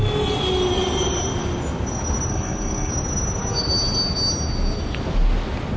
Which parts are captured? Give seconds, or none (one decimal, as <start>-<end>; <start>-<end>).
0.0-2.3; 2.9-5.8